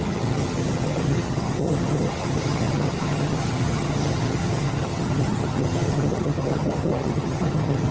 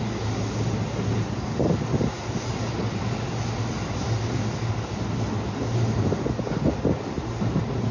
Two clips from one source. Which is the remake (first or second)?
first